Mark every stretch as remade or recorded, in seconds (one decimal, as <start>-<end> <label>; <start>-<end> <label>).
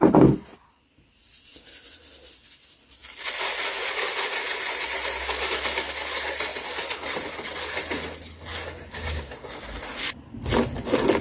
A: 0.0-11.2 recorded